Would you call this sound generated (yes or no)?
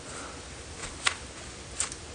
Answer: no